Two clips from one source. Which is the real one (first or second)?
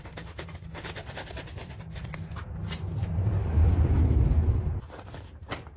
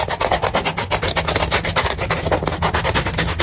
second